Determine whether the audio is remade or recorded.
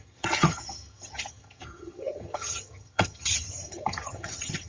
remade